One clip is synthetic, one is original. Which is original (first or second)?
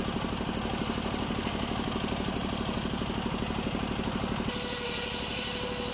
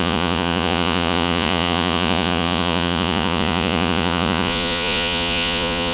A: first